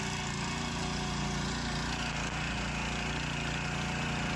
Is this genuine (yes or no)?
yes